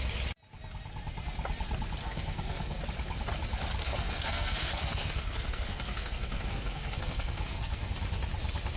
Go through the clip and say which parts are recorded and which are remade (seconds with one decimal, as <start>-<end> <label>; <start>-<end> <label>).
0.0-2.0 recorded; 2.0-2.8 remade; 2.8-3.8 recorded; 3.8-7.9 remade; 7.9-8.8 recorded